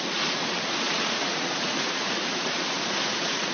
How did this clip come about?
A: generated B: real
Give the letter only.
A